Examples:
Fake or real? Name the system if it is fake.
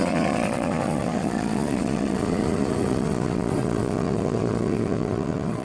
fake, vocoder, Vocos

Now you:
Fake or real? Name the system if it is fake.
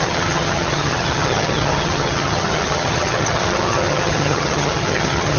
fake, vocoder, HiFi-GAN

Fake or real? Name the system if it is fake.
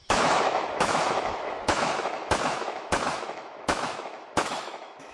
fake, autoencoder, DAC-VAE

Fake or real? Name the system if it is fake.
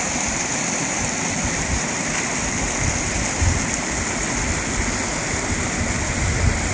real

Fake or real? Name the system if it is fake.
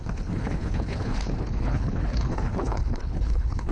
fake, codec, HILCodec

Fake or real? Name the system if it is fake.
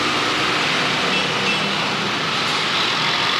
real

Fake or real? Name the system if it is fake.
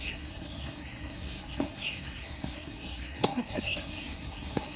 fake, codec, SNAC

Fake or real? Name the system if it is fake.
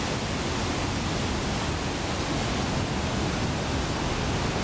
real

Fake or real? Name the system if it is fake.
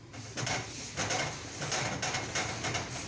real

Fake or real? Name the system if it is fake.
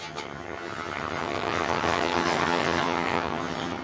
fake, vocoder, HiFi-GAN